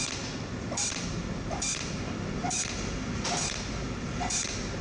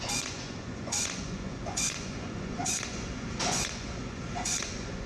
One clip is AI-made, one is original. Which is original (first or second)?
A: first